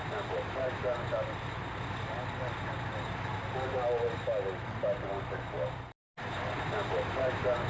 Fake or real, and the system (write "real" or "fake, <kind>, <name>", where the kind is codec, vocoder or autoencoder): real